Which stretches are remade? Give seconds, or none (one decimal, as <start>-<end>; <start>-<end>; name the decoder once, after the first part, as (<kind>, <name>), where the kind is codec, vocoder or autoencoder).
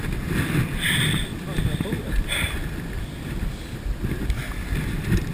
1.3-4.3 (vocoder, BigVGAN v2)